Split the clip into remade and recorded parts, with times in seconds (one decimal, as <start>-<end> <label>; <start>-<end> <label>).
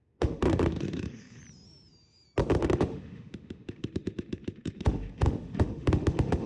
0.0-1.4 remade; 1.4-2.6 recorded; 2.6-6.5 remade